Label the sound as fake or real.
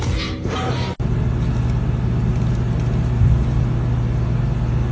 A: real